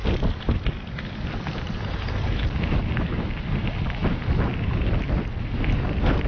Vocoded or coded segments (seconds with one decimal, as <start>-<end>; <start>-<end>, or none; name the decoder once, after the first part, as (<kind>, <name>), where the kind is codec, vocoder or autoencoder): none